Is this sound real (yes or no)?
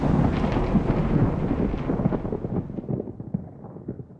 yes